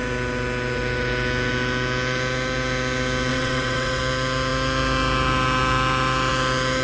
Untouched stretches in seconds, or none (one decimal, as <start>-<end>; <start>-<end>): 0.0-3.3; 4.0-6.8